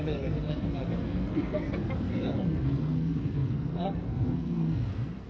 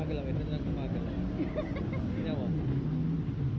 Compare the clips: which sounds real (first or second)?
second